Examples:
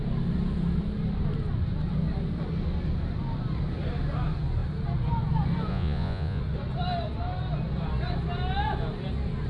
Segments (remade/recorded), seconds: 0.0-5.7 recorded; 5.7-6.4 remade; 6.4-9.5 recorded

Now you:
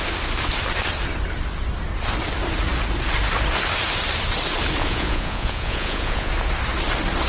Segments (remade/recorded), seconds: 0.0-4.8 recorded; 4.8-6.3 remade; 6.3-7.3 recorded

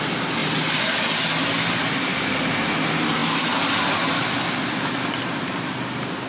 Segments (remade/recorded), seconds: 0.0-6.3 recorded

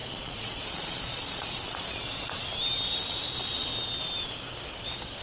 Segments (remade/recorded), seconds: 0.0-2.5 remade; 2.5-3.1 recorded; 3.1-3.7 remade; 3.7-5.2 recorded

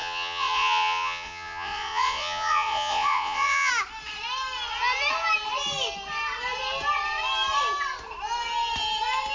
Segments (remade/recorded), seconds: 0.0-3.7 remade; 3.7-9.3 recorded

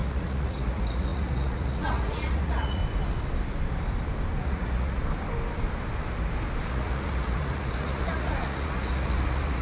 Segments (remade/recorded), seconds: 0.0-2.8 remade; 2.8-4.4 recorded; 4.4-5.0 remade; 5.0-6.7 recorded; 6.7-9.6 remade